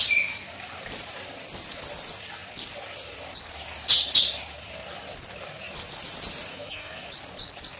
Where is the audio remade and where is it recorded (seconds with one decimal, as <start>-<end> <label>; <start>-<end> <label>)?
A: 0.0-6.5 recorded; 6.5-7.1 remade; 7.1-7.8 recorded